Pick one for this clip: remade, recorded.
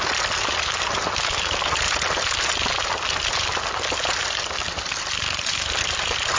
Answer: recorded